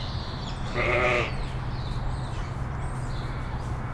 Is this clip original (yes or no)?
yes